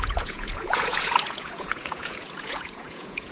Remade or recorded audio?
remade